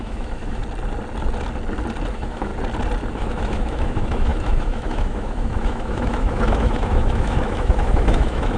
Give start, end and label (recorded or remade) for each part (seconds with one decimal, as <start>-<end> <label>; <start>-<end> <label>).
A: 0.0-0.6 remade; 0.6-2.1 recorded; 2.1-2.5 remade; 2.5-3.1 recorded; 3.1-8.6 remade